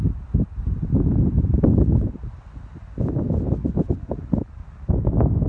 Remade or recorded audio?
recorded